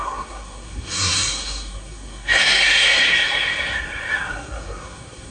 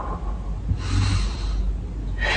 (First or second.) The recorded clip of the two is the second